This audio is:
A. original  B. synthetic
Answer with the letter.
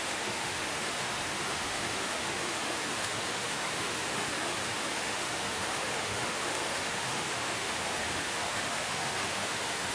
B